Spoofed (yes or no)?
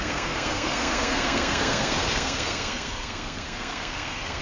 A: yes